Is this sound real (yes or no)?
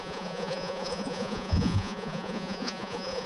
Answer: no